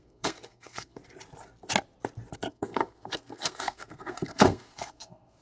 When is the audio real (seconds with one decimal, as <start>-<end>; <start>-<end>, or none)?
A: 1.0-2.5